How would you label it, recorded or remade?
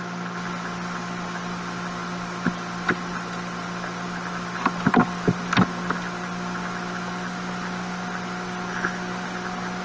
recorded